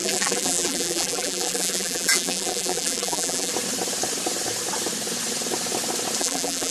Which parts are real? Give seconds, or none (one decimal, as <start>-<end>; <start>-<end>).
3.5-6.2